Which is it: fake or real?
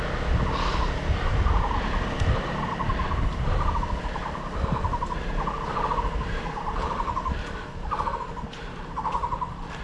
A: real